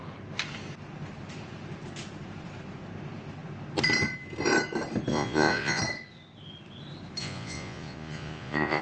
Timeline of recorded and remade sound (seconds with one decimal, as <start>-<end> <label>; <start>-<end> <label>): 0.0-5.1 recorded; 5.1-5.8 remade; 5.8-7.2 recorded; 7.2-8.8 remade